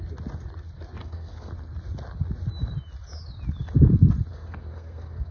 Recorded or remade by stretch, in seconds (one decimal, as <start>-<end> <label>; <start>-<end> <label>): 0.0-1.0 recorded; 1.0-1.5 remade; 1.5-4.3 recorded; 4.3-5.3 remade